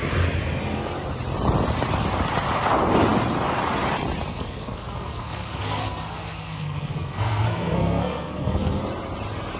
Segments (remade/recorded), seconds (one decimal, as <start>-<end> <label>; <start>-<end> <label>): 0.0-4.3 recorded; 4.3-8.8 remade; 8.8-9.6 recorded